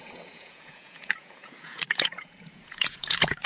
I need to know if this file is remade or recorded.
remade